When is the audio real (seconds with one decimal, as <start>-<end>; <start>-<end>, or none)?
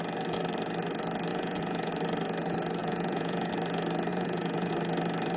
0.0-1.3; 1.9-2.8; 3.5-4.1; 4.7-5.4